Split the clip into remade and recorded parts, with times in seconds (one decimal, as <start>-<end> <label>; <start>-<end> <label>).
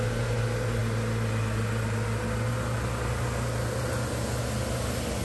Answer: 0.0-5.2 recorded